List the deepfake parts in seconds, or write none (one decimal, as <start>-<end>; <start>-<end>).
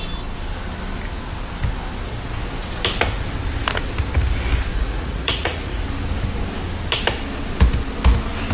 4.7-5.8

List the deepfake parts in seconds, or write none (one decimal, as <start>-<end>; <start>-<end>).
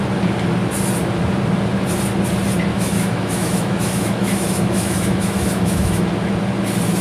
2.7-6.0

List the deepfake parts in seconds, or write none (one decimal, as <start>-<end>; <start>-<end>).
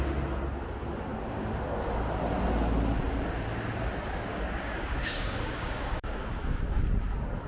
4.3-6.8